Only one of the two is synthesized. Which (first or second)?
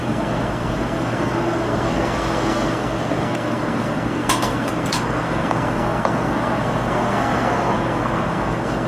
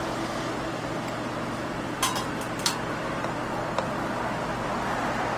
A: first